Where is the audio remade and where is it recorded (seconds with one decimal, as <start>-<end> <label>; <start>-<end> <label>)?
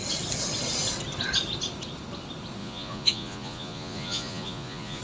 0.0-2.6 recorded; 2.6-5.0 remade